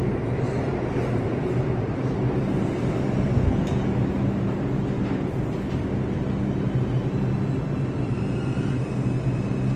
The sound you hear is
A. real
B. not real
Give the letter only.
A